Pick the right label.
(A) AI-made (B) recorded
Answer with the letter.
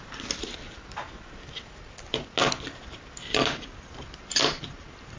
B